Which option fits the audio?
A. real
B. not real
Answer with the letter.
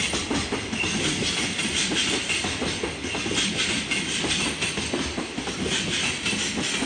A